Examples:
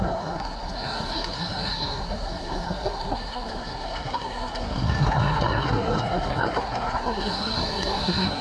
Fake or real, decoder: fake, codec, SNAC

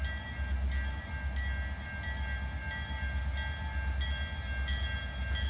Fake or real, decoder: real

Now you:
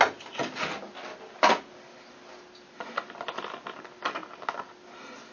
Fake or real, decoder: real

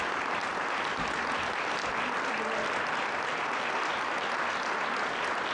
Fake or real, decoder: real